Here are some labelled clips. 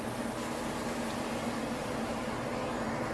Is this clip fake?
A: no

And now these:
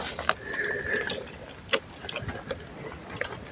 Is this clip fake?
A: no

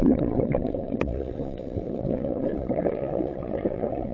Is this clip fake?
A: yes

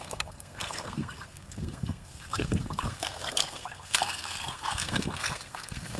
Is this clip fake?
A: yes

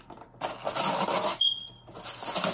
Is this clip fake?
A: no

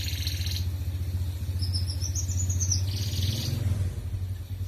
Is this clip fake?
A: no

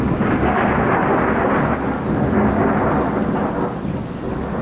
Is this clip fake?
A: no